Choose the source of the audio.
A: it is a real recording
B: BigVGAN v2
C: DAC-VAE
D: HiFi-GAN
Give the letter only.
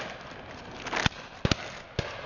A